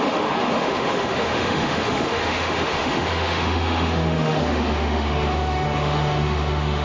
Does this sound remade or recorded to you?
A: remade